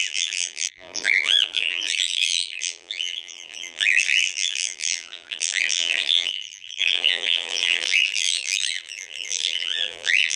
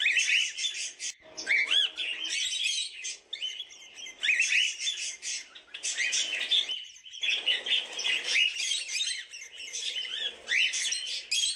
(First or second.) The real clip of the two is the second